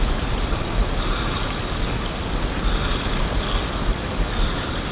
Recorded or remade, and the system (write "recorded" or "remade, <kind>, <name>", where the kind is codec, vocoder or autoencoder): recorded